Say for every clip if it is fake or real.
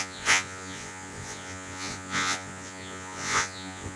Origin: fake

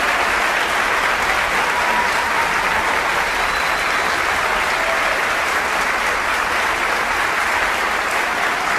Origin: real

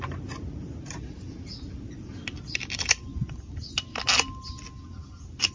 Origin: real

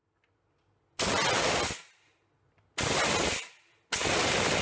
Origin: real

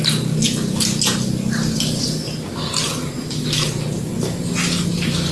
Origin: real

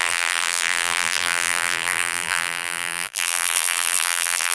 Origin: fake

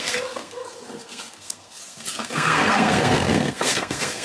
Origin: fake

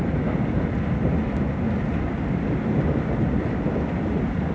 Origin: real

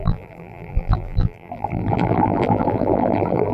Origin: fake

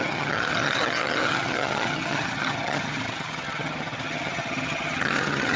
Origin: fake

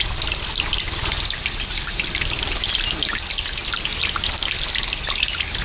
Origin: real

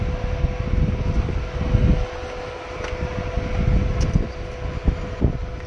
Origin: real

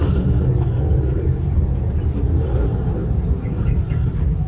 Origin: real